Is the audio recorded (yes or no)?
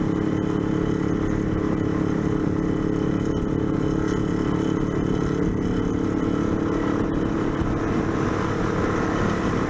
yes